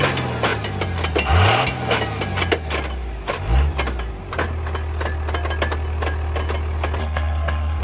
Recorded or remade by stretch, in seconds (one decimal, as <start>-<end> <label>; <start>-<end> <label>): 0.0-7.0 recorded; 7.0-7.8 remade